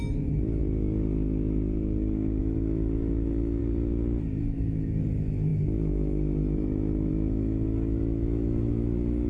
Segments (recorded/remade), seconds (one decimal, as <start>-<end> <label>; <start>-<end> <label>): 0.0-0.6 remade; 0.6-2.4 recorded; 2.4-3.6 remade; 3.6-4.4 recorded; 4.4-9.3 remade